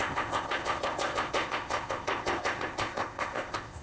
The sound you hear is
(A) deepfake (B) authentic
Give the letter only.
A